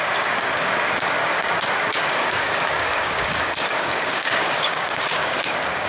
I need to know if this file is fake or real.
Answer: fake